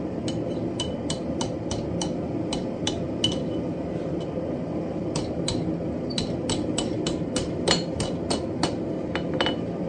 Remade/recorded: recorded